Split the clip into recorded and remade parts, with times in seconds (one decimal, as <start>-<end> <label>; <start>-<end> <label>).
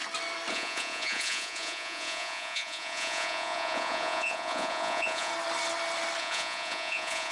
0.0-0.5 recorded; 0.5-5.3 remade; 5.3-6.2 recorded; 6.2-7.3 remade